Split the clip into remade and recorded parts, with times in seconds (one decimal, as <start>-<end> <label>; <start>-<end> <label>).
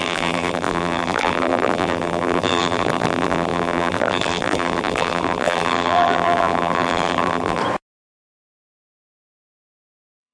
0.0-7.6 remade; 7.6-9.7 recorded; 9.7-10.3 remade